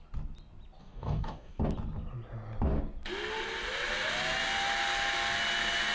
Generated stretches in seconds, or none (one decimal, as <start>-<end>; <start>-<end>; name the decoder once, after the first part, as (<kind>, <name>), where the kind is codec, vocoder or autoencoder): 0.8-1.6 (codec, DAC)